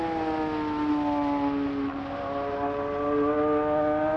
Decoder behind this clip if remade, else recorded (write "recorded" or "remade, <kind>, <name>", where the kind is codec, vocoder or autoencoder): recorded